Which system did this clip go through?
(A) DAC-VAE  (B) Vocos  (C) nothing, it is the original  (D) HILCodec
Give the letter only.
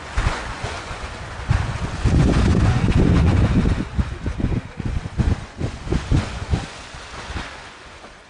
B